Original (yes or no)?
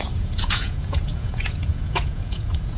no